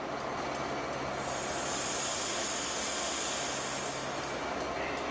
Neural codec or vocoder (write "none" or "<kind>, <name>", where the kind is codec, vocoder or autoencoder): none